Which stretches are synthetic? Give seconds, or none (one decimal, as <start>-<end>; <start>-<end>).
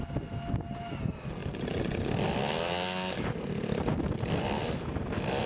none